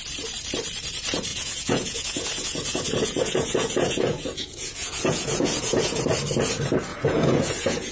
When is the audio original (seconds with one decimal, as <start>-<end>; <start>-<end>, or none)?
0.0-1.3; 6.0-6.9

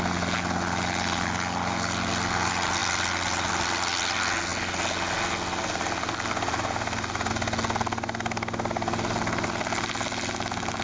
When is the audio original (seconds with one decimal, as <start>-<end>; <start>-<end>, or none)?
0.0-10.8